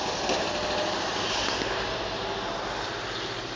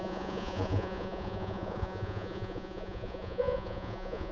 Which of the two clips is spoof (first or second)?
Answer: second